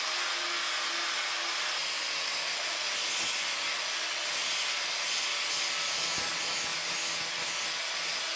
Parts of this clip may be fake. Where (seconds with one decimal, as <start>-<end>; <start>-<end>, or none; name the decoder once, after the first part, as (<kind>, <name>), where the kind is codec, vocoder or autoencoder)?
none